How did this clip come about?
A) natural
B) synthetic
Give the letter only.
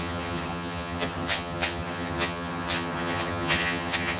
B